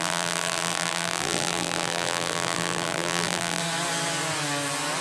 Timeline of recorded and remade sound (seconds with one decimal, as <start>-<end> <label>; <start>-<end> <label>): 0.0-3.6 remade; 3.6-5.0 recorded